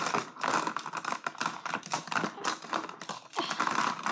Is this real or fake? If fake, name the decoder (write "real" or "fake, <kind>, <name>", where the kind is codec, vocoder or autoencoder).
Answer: real